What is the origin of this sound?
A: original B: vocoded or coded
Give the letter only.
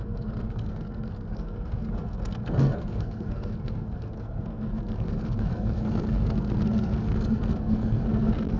B